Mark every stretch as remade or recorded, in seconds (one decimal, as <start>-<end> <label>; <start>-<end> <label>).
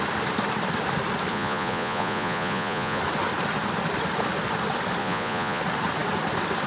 0.0-1.3 recorded; 1.3-3.0 remade; 3.0-5.0 recorded; 5.0-5.6 remade; 5.6-6.7 recorded